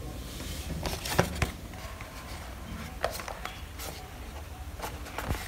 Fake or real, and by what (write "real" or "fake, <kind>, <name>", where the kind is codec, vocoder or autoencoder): fake, vocoder, BigVGAN v2